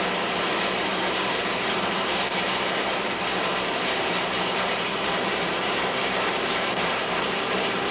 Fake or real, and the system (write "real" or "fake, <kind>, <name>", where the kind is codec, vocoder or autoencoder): fake, vocoder, BigVGAN v2